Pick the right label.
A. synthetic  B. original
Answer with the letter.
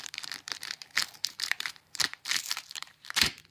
A